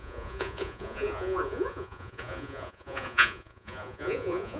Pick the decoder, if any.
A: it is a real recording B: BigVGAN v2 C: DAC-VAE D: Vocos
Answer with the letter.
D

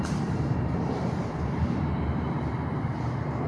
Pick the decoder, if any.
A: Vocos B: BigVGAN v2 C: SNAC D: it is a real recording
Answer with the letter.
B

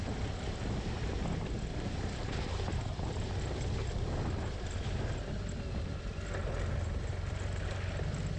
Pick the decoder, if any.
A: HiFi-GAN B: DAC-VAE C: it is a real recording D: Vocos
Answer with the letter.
C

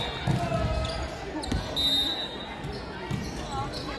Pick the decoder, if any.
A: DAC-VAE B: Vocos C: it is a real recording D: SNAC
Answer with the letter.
C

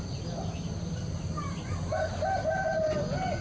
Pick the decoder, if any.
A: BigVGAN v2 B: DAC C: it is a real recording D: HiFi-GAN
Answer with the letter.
C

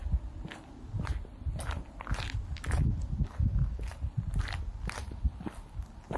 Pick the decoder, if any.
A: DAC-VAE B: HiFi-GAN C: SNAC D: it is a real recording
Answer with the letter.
D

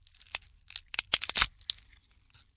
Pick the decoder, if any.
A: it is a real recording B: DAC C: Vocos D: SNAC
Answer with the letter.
A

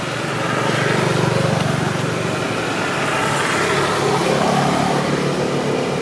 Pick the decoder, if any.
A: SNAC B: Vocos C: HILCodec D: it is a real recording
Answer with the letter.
D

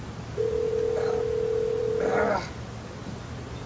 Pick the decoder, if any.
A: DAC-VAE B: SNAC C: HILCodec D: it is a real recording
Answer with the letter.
D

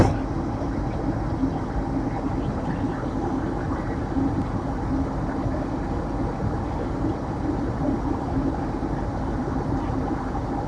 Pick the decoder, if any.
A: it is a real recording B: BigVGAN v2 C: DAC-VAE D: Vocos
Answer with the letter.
B